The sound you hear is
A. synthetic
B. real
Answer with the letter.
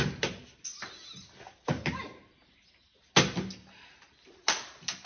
B